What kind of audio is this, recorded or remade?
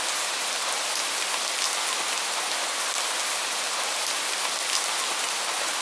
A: recorded